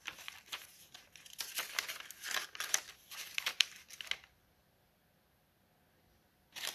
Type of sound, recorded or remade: recorded